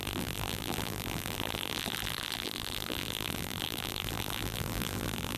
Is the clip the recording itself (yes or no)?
no